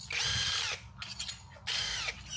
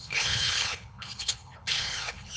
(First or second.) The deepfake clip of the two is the second